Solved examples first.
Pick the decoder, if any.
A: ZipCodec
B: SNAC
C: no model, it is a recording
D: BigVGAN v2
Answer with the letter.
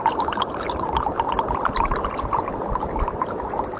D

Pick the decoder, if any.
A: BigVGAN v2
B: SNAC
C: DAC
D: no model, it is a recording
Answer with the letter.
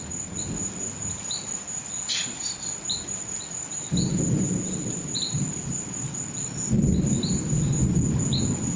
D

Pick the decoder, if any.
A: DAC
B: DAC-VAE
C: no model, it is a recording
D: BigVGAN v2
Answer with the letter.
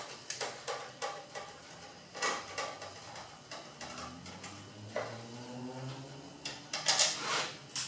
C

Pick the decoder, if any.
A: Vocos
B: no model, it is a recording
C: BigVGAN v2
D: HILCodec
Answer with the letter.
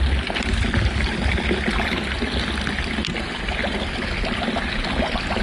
B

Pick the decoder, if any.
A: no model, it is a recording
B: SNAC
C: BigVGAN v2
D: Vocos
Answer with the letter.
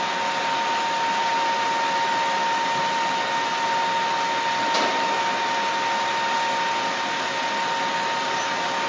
A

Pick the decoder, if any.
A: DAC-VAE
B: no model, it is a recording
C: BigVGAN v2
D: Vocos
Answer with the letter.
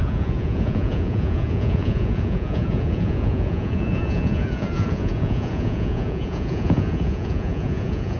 D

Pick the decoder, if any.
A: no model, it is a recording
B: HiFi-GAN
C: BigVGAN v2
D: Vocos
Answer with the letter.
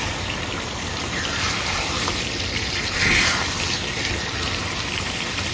A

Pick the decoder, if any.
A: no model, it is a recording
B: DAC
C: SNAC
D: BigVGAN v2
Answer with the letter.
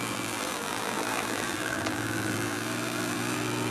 D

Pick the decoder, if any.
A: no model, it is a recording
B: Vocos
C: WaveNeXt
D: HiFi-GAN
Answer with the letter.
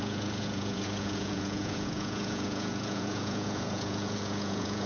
B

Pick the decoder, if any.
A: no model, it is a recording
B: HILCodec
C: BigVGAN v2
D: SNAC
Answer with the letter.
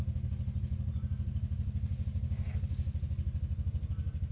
A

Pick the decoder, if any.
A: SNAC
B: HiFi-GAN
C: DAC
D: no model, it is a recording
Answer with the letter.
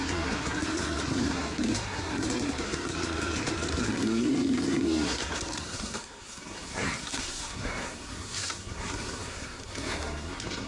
A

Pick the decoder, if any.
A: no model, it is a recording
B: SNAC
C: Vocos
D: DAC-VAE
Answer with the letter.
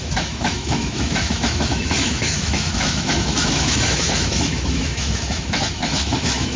D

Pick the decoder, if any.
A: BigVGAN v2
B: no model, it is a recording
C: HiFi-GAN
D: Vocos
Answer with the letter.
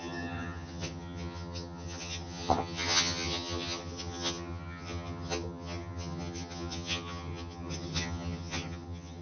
C